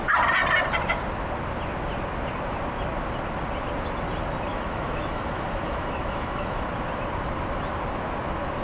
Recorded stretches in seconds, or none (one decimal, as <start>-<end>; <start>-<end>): 0.0-4.5; 6.6-8.6